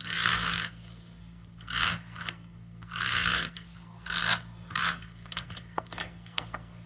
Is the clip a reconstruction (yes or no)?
yes